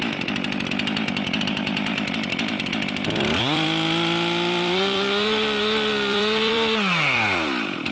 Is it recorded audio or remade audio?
remade